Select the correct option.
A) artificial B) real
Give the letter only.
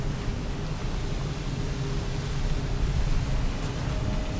B